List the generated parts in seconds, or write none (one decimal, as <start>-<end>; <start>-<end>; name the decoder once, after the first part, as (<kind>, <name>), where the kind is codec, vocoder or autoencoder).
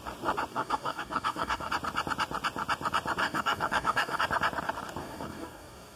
0.5-1.7 (codec, DAC); 3.2-4.2; 5.0-6.0